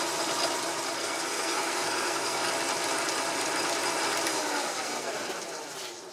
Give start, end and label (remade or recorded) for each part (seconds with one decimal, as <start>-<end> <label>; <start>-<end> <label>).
0.0-1.0 recorded; 1.0-2.5 remade; 2.5-4.3 recorded; 4.3-5.3 remade; 5.3-6.1 recorded